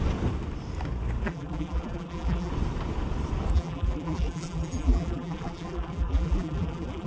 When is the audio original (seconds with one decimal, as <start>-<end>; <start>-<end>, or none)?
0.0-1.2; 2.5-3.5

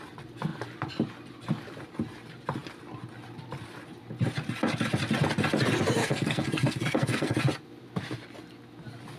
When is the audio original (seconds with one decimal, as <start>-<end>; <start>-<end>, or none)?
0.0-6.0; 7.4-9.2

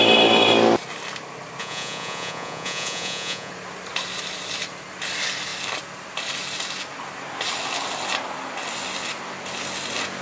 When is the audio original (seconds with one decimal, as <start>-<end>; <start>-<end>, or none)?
0.0-1.6; 3.5-10.2

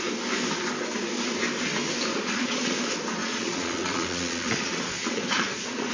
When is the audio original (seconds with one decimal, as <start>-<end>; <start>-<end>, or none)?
0.0-2.1; 2.8-3.2

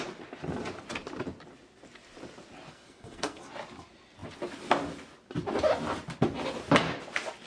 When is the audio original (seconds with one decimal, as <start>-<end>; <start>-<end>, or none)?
0.0-2.7; 3.4-7.5